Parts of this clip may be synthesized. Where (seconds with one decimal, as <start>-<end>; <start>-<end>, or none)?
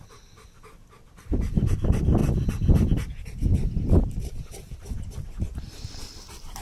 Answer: none